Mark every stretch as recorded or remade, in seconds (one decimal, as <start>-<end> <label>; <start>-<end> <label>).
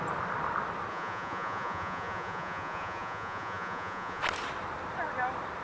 0.0-0.9 recorded; 0.9-4.2 remade; 4.2-5.6 recorded